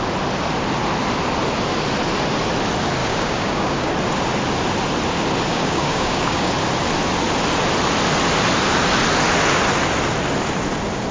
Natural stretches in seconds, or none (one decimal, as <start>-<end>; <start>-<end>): 0.0-3.0; 3.9-5.5; 6.5-11.1